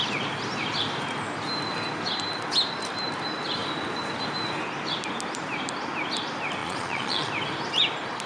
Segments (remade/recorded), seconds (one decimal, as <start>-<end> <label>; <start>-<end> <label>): 0.0-6.6 recorded; 6.6-7.3 remade; 7.3-8.3 recorded